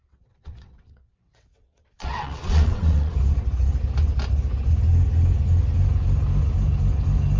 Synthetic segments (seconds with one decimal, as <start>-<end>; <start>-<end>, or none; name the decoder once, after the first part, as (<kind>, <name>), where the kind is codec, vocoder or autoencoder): 0.0-3.1 (vocoder, WaveNeXt)